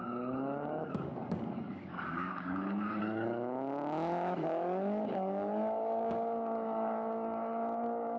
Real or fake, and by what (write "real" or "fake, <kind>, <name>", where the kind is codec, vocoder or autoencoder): fake, codec, DAC